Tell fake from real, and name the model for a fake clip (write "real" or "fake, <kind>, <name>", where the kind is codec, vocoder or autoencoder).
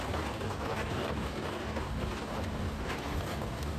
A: fake, codec, DAC